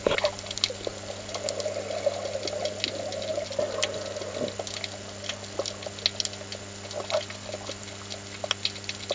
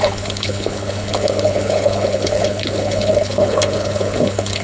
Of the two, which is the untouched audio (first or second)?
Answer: first